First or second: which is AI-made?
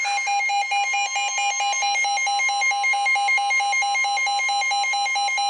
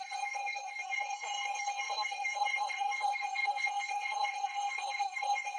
second